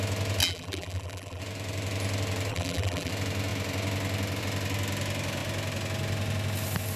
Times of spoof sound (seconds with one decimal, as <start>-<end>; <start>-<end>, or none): 0.4-1.4; 2.5-3.1